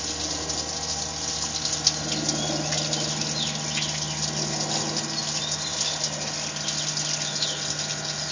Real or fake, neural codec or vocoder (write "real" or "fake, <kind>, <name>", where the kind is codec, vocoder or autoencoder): real